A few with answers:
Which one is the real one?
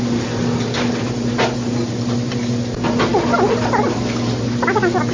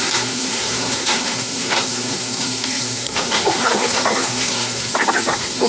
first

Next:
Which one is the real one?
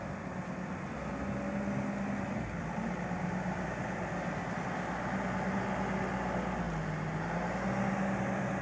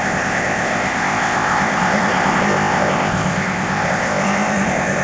first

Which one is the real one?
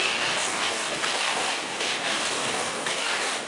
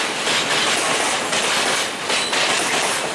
second